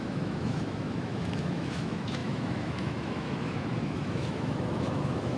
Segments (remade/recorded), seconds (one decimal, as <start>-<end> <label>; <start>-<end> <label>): 0.0-5.4 remade